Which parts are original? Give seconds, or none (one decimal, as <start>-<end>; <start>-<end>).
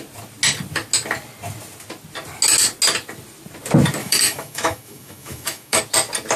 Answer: 0.0-4.0; 5.8-6.4